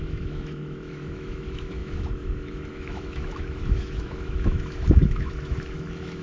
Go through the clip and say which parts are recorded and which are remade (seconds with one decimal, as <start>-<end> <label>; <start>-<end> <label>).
0.0-6.2 remade